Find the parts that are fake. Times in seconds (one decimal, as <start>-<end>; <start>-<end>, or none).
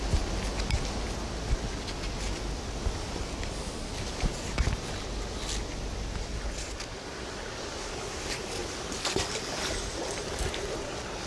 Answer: none